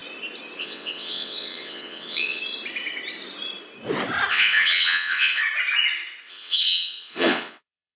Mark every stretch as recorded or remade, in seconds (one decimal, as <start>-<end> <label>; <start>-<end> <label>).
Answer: 0.0-0.6 recorded; 0.6-2.4 remade; 2.4-4.3 recorded; 4.3-5.4 remade; 5.4-6.3 recorded; 6.3-8.0 remade